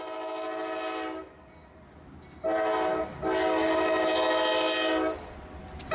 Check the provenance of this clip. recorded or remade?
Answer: recorded